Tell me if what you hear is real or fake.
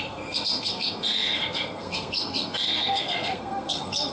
fake